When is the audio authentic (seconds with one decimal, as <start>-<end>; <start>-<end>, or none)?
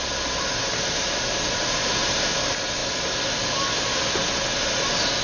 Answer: 0.0-5.2